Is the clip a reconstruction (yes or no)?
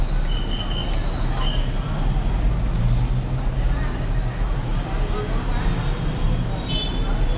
no